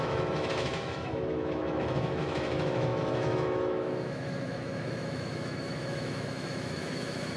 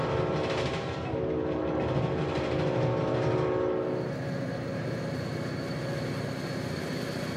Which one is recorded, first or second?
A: second